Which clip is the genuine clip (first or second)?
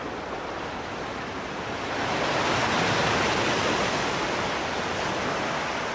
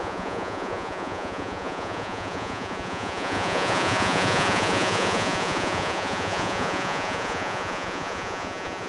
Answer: first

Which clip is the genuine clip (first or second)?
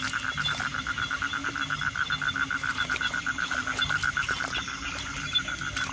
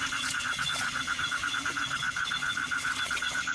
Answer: first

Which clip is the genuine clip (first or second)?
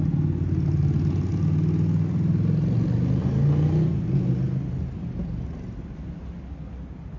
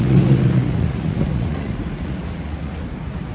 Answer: first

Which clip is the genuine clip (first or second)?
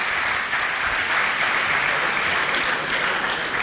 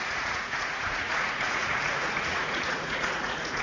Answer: first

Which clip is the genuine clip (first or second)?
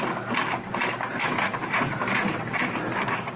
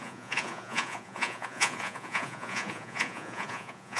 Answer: first